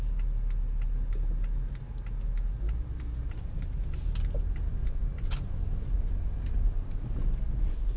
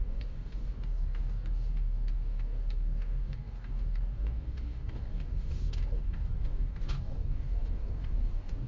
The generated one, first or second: second